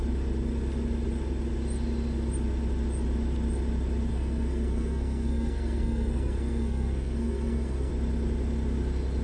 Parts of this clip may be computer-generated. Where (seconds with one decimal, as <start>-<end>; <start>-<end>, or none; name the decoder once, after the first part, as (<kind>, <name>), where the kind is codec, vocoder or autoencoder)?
4.1-7.9 (codec, SNAC)